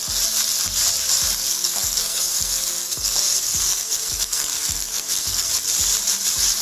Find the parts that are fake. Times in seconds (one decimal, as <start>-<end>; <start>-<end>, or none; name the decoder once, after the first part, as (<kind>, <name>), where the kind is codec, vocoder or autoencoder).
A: 1.5-5.5 (codec, SNAC)